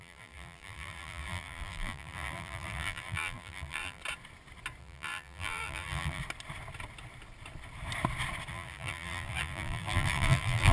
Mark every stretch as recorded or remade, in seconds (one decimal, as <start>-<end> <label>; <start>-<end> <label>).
0.0-4.0 remade; 4.0-4.8 recorded; 4.8-6.2 remade; 6.2-8.5 recorded; 8.5-10.7 remade